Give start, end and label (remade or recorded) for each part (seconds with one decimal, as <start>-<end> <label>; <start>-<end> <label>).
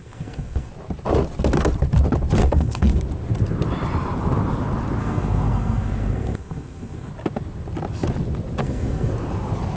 0.0-0.7 remade; 0.7-2.4 recorded; 2.4-3.0 remade; 3.0-5.0 recorded; 5.0-7.1 remade; 7.1-8.6 recorded; 8.6-9.1 remade; 9.1-9.8 recorded